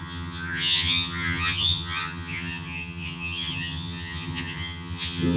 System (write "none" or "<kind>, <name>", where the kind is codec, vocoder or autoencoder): vocoder, HiFi-GAN